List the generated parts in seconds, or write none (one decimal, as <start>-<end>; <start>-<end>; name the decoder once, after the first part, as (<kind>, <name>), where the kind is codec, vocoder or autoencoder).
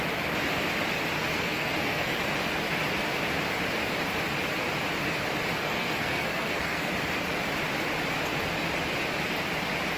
1.3-2.2 (codec, SNAC); 5.6-6.9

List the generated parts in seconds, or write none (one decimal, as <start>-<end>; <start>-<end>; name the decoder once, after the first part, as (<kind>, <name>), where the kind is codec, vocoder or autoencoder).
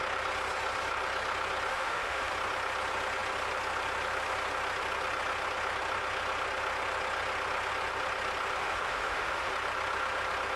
1.7-2.3 (autoencoder, DAC-VAE); 8.6-9.5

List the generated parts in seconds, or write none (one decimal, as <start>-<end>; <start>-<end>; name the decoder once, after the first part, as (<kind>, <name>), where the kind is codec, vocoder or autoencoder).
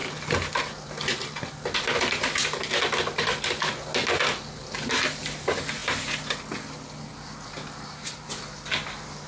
none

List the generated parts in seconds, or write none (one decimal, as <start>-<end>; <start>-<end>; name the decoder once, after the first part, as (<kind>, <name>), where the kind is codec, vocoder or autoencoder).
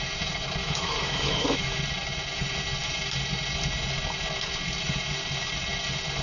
0.6-1.8 (autoencoder, DAC-VAE)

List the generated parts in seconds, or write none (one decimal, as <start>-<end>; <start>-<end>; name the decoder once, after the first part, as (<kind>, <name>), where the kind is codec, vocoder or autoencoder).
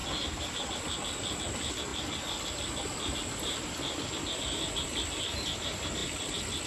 none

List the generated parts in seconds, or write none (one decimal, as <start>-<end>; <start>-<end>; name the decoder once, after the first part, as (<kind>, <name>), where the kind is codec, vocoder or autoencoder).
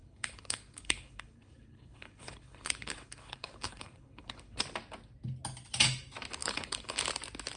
0.0-4.6 (codec, HILCodec); 6.4-7.0